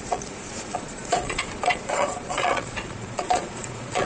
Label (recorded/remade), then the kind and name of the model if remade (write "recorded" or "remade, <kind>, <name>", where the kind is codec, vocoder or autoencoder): remade, vocoder, Vocos